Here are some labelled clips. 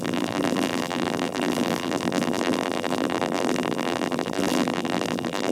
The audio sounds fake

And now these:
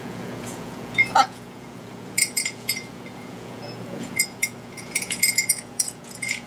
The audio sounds fake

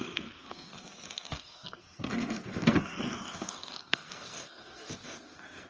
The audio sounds fake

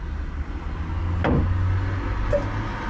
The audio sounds real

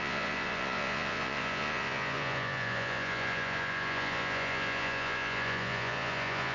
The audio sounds fake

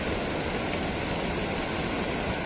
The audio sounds real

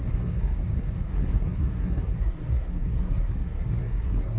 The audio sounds fake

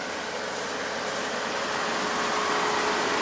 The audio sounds real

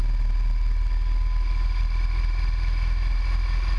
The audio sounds real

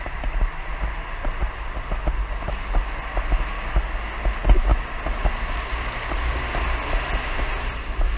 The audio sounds real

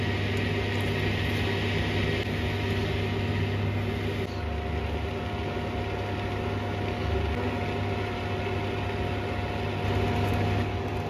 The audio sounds real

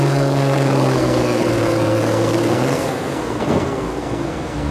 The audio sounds fake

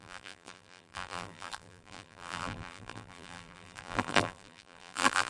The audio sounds fake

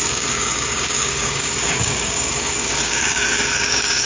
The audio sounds fake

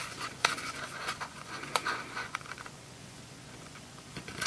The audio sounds fake